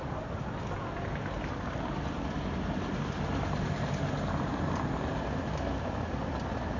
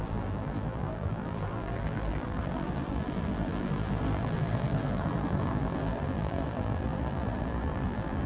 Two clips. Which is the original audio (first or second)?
first